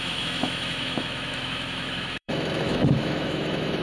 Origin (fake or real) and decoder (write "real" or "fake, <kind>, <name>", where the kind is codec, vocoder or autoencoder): fake, autoencoder, DAC-VAE